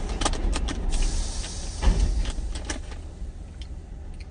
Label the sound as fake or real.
real